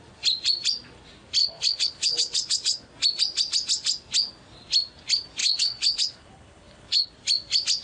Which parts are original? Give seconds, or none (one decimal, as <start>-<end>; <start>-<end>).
0.0-1.4; 2.9-5.4; 7.1-7.8